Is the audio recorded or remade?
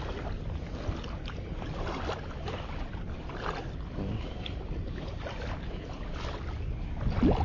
recorded